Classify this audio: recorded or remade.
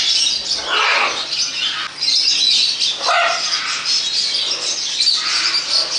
recorded